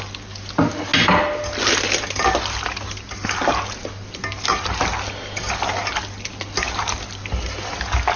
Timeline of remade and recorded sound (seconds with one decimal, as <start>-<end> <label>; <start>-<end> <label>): 0.0-8.2 recorded

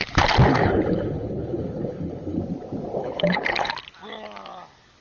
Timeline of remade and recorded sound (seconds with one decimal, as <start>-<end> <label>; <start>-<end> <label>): 0.0-0.5 recorded; 0.5-2.4 remade; 2.4-3.0 recorded; 3.0-3.7 remade; 3.7-5.0 recorded